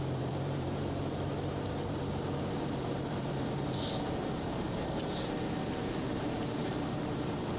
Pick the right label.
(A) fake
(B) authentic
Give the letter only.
A